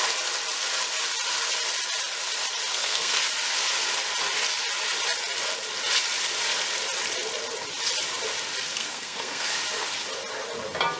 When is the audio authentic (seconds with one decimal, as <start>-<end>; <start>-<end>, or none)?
0.0-2.7; 3.2-8.7; 9.5-11.0